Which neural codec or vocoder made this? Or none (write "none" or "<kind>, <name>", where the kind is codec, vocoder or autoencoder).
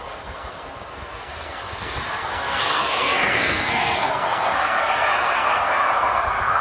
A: codec, SNAC